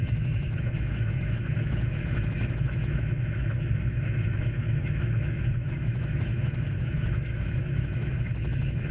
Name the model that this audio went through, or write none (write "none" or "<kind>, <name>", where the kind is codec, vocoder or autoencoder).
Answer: autoencoder, DAC-VAE